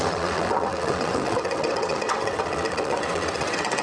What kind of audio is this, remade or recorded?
remade